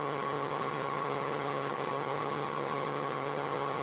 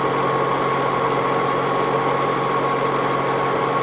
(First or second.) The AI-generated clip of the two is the first